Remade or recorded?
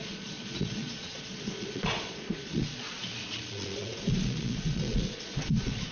remade